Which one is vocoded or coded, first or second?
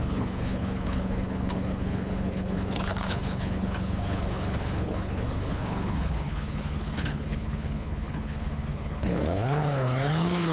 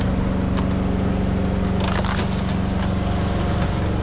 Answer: first